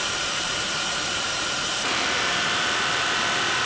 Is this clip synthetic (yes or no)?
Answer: yes